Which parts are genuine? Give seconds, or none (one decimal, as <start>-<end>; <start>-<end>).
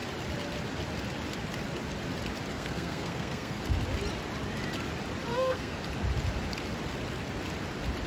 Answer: 0.0-2.5; 3.6-5.3; 5.8-8.1